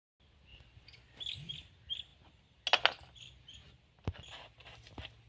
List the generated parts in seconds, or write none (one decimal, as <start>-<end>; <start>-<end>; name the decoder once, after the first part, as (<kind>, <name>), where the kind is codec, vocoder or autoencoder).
4.6-5.3 (vocoder, BigVGAN v2)

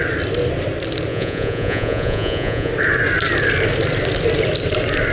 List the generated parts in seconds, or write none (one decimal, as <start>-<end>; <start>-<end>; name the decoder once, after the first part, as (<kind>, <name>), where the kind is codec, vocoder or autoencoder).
1.1-2.7 (vocoder, Vocos)

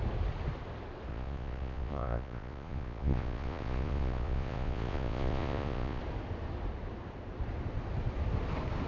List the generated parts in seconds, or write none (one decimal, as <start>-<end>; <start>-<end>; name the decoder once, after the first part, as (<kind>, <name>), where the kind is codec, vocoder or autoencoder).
1.1-6.0 (vocoder, Vocos)

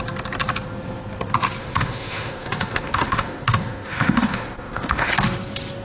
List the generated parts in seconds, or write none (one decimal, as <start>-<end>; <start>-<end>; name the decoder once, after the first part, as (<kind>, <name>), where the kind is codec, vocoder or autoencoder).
1.6-5.1 (autoencoder, DAC-VAE)

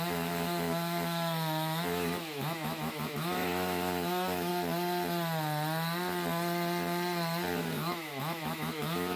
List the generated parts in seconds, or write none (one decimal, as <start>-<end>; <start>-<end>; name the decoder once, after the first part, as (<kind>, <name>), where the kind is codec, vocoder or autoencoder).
0.0-4.5 (autoencoder, DAC-VAE); 7.6-9.2

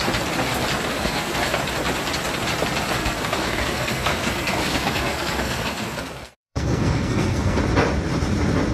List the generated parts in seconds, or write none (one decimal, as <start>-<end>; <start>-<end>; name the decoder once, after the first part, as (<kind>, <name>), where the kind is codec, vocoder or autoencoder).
0.9-1.6 (codec, SNAC); 3.0-7.6

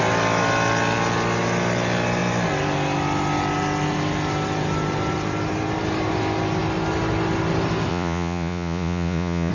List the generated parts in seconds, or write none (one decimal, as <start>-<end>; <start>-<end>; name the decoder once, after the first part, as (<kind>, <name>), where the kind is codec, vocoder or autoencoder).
7.9-9.5 (vocoder, Vocos)

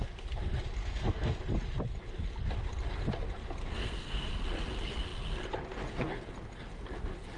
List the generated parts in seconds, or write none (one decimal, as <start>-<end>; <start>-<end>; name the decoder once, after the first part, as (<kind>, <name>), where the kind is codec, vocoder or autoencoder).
0.8-1.4 (codec, SNAC); 3.6-4.3